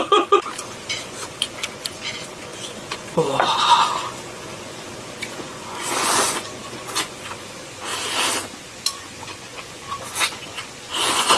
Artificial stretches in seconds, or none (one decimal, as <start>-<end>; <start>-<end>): 0.0-7.9; 8.7-11.4